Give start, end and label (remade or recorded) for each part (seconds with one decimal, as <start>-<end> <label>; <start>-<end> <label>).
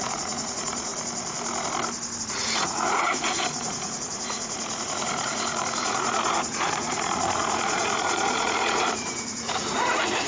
0.0-0.9 remade; 0.9-2.2 recorded; 2.2-10.3 remade